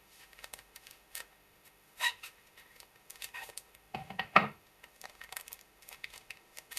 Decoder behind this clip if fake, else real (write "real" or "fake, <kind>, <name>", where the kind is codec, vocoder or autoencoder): fake, autoencoder, DAC-VAE